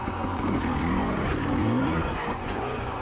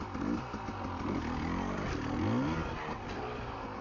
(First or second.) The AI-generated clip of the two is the first